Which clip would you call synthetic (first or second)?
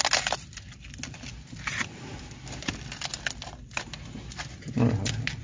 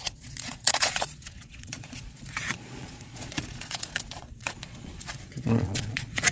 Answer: second